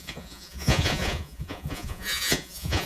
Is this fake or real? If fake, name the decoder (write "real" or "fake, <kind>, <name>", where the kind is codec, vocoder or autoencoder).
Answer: fake, vocoder, Vocos